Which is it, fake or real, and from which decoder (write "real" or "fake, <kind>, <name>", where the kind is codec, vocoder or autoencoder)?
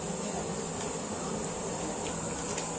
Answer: real